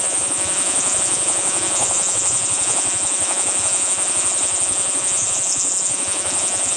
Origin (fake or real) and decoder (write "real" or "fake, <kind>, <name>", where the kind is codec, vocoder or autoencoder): fake, vocoder, Vocos